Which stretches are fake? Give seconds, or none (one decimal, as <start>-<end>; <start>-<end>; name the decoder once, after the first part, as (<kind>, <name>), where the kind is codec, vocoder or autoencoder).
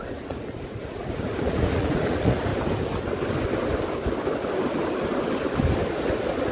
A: 0.0-2.5 (vocoder, Vocos)